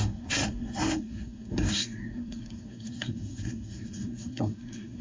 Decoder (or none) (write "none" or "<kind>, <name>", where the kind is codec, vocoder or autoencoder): codec, SNAC